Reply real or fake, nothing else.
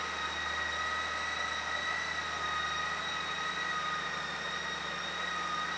real